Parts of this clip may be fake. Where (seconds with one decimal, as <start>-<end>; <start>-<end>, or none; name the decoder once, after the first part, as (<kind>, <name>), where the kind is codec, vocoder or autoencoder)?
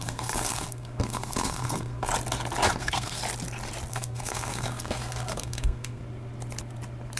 0.0-2.1 (codec, SNAC); 2.8-3.2; 3.9-6.0